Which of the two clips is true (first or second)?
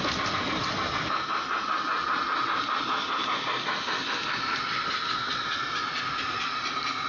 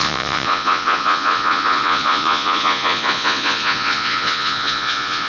first